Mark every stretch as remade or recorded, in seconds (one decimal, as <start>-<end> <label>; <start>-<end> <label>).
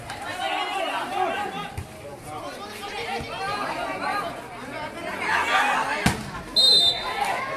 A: 0.0-7.6 recorded